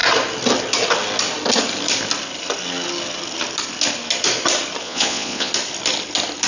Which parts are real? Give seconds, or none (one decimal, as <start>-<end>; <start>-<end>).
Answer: 0.0-4.8; 5.5-6.5